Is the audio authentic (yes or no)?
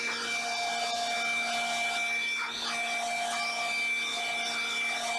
yes